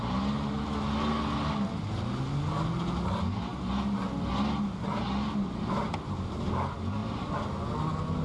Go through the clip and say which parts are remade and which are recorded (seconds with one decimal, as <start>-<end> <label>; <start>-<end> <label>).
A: 0.0-8.2 recorded